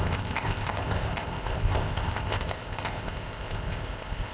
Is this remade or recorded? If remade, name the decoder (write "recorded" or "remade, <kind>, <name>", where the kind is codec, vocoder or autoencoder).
remade, codec, ZipCodec